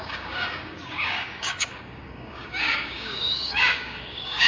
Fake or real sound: fake